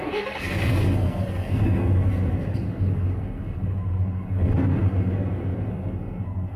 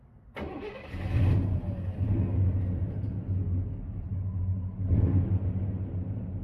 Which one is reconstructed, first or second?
first